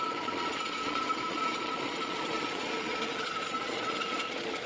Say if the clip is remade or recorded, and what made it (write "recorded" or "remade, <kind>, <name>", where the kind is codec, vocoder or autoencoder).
remade, vocoder, Vocos